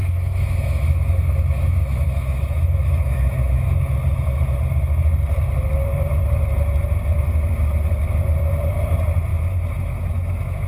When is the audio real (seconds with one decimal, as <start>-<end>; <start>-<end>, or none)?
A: 3.8-9.3